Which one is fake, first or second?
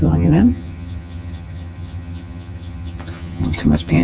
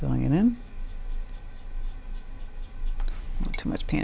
first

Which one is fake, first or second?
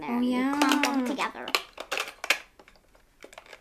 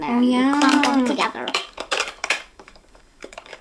second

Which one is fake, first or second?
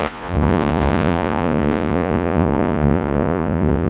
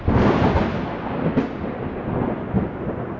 first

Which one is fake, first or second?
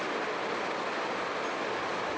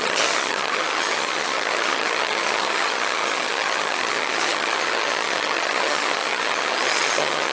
second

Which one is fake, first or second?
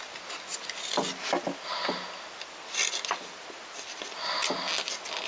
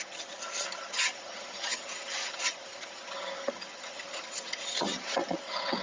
second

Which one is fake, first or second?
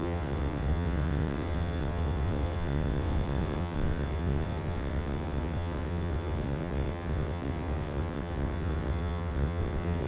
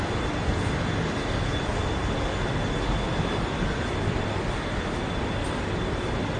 first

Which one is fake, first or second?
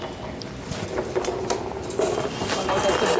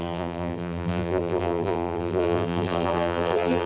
second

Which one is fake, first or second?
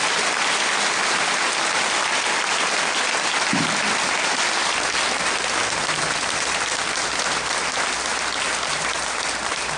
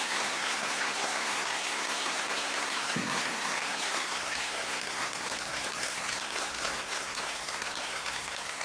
second